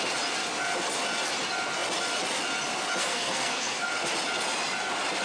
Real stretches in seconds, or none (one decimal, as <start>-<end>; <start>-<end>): 0.0-3.0; 3.9-5.2